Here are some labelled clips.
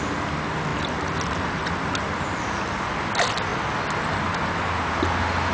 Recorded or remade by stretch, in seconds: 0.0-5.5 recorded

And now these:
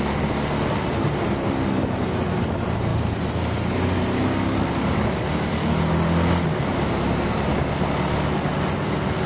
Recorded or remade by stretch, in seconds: 0.0-9.3 recorded